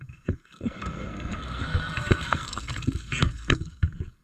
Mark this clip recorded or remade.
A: remade